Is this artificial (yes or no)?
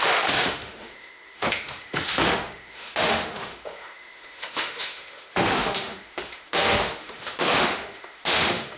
yes